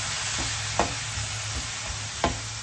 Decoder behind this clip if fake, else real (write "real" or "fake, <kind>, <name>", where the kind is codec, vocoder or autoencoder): real